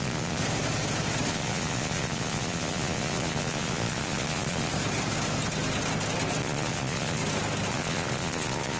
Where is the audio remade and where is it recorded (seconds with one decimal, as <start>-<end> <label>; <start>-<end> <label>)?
0.0-0.4 remade; 0.4-1.3 recorded; 1.3-4.7 remade; 4.7-6.4 recorded; 6.4-7.2 remade; 7.2-7.7 recorded; 7.7-8.8 remade